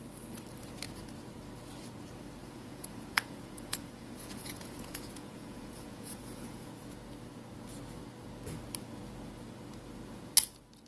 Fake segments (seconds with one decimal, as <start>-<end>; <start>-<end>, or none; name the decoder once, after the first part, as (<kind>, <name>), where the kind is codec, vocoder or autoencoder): 2.4-6.7 (vocoder, Vocos)